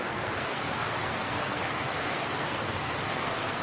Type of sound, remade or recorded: remade